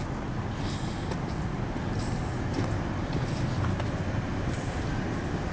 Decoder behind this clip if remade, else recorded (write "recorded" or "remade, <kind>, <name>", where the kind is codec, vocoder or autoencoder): recorded